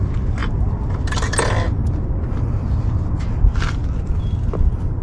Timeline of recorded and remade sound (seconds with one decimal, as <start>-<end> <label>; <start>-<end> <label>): 0.0-5.0 recorded